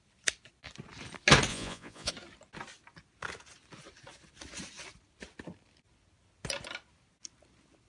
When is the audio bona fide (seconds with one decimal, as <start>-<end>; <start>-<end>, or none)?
0.0-1.5; 2.1-7.9

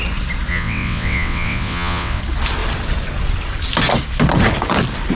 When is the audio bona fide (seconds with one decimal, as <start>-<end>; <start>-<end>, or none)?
0.0-0.5; 2.2-5.1